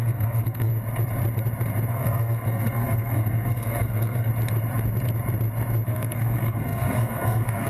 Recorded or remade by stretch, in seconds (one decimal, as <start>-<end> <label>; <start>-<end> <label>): 0.0-0.7 remade; 0.7-1.9 recorded; 1.9-4.3 remade; 4.3-5.9 recorded; 5.9-7.7 remade